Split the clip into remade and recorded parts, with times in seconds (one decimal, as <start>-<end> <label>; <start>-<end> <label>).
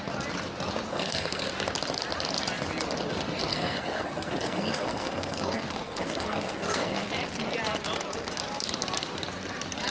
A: 0.0-0.9 recorded; 0.9-1.5 remade; 1.5-3.5 recorded; 3.5-7.1 remade; 7.1-9.9 recorded